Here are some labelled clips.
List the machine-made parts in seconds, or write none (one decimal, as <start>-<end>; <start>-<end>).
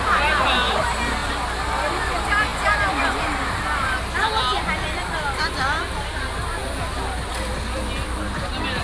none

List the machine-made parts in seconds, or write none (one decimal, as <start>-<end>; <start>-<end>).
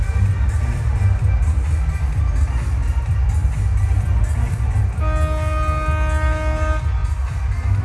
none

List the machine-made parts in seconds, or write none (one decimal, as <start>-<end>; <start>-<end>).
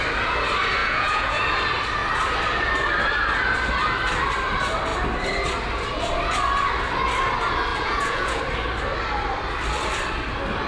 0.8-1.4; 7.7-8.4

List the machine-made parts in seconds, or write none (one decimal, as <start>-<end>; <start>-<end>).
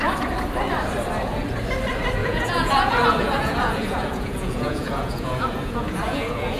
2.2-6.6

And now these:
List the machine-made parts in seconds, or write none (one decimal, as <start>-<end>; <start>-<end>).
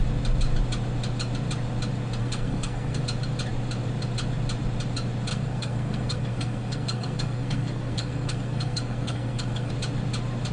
2.2-3.0; 5.3-9.7